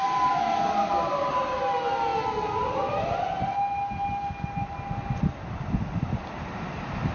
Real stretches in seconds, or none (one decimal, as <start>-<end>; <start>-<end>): 0.0-7.1